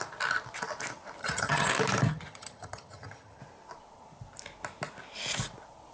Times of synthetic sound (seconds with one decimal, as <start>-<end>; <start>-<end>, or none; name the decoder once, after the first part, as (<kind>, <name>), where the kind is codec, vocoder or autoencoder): 1.2-1.7 (vocoder, HiFi-GAN); 2.1-3.4